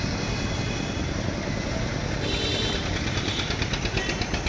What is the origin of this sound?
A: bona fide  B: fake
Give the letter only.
A